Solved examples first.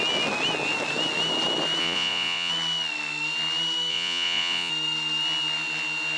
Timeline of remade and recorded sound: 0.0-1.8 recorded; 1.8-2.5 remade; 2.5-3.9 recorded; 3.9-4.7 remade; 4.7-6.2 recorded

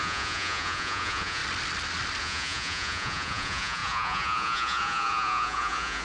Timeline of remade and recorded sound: 0.0-1.4 remade; 1.4-2.2 recorded; 2.2-6.0 remade

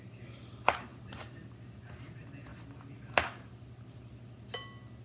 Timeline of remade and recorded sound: 0.0-5.0 recorded

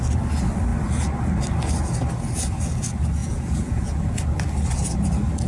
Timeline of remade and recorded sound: 0.0-3.2 recorded; 3.2-4.0 remade; 4.0-5.5 recorded

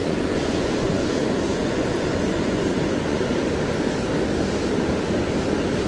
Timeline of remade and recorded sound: 0.0-3.3 remade; 3.3-5.9 recorded

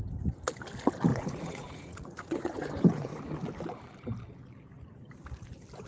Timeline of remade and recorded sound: 0.0-1.1 recorded; 1.1-3.2 remade; 3.2-5.9 recorded

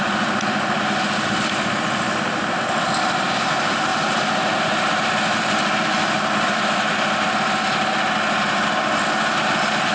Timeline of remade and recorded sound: 0.0-9.9 recorded

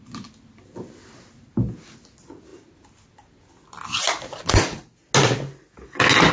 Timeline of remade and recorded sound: 0.0-6.3 recorded